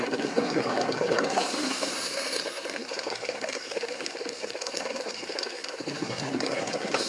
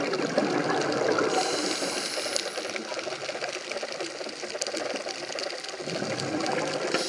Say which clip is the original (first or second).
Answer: second